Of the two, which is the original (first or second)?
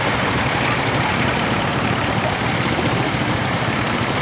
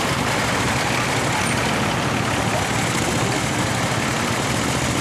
second